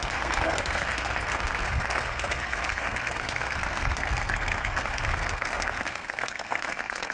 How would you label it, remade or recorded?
remade